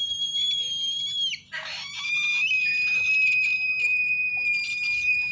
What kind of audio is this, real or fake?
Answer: real